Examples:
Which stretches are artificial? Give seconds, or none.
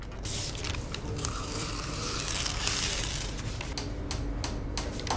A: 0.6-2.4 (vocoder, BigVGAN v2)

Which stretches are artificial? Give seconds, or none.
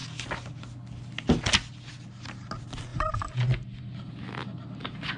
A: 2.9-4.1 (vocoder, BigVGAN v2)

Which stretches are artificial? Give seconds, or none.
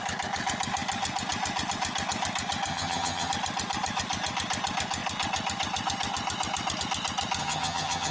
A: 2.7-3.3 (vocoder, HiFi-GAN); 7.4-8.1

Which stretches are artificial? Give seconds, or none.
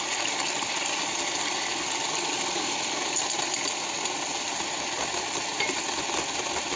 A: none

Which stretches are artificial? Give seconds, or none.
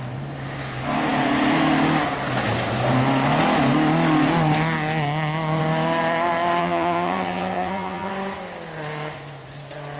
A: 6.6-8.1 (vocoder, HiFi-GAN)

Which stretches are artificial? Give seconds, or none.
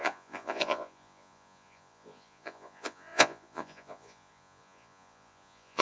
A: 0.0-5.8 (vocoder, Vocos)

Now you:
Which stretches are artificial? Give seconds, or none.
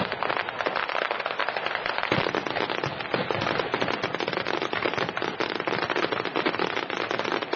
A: none